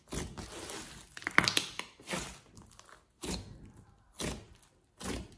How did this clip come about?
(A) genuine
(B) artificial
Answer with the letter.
A